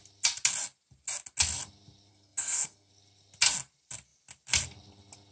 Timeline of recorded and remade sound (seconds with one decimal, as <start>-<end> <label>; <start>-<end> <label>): 0.0-2.1 recorded; 2.1-2.9 remade; 2.9-5.3 recorded